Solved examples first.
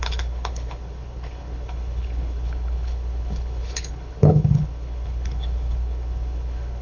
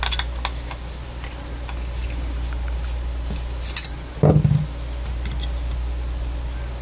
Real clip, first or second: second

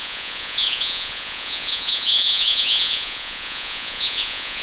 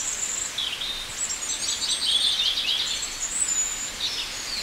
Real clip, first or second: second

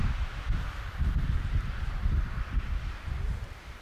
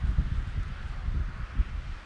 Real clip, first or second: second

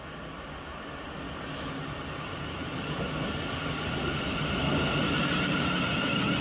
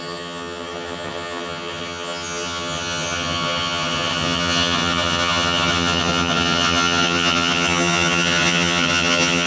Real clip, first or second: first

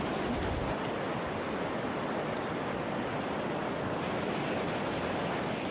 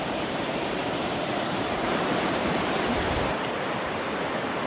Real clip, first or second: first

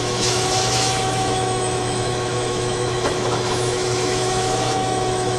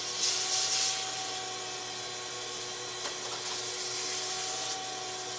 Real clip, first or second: second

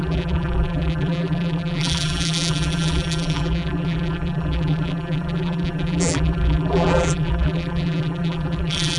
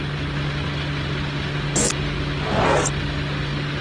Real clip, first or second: second